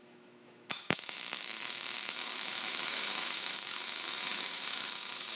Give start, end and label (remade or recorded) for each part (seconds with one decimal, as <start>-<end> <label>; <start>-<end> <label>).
0.0-5.4 remade